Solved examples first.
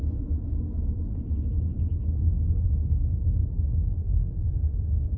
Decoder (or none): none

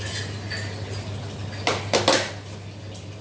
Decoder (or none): none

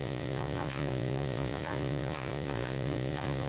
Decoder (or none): vocoder, Vocos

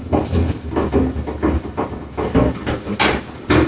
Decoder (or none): none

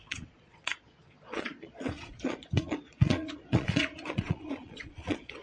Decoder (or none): vocoder, Vocos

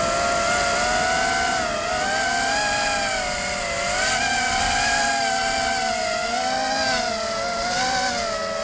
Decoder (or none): none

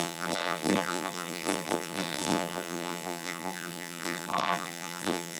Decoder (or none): vocoder, BigVGAN v2